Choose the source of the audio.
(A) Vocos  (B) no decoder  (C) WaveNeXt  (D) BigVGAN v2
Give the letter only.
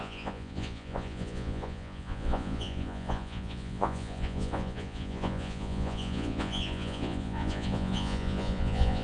A